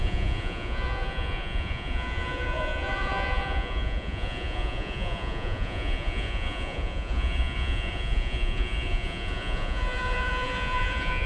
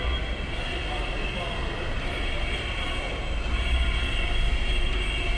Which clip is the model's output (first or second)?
first